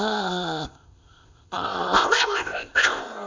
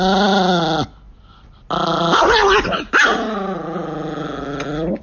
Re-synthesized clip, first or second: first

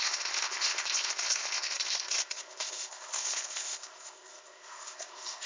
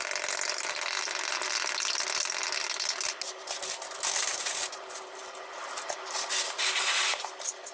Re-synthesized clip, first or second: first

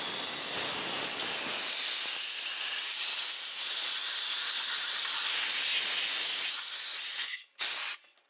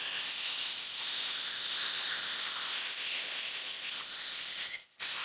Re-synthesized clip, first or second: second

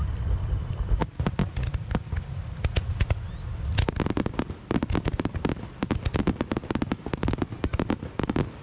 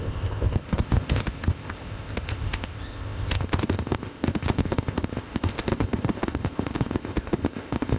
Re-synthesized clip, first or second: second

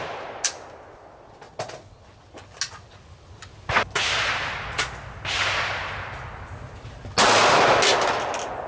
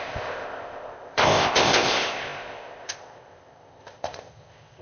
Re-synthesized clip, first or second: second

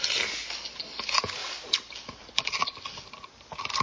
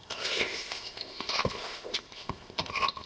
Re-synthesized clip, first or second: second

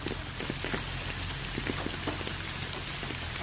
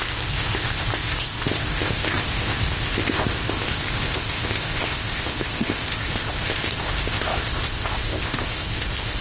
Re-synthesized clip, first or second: second